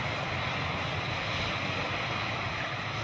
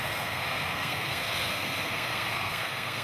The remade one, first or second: second